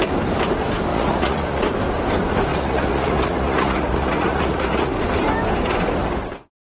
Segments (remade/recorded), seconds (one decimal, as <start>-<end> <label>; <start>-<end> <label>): 0.0-0.9 recorded; 0.9-1.7 remade; 1.7-2.5 recorded; 2.5-4.9 remade; 4.9-6.7 recorded